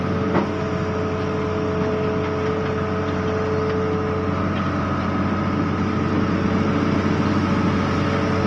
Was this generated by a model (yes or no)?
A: no